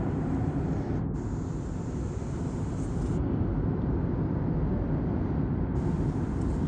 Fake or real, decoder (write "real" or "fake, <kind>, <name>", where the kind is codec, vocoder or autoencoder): real